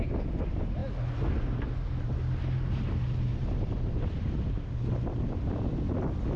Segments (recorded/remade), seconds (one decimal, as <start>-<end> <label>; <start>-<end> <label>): 0.0-3.3 recorded; 3.3-4.4 remade; 4.4-6.4 recorded

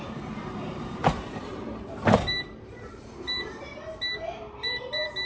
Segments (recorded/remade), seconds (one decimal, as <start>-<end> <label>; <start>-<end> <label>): 0.0-3.6 remade; 3.6-5.3 recorded

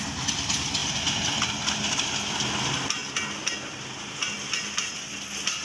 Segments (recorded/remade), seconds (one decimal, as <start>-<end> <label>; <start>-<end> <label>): 0.0-5.6 recorded

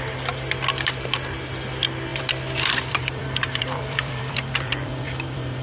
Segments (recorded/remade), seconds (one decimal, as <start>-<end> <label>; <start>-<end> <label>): 0.0-2.1 recorded; 2.1-5.6 remade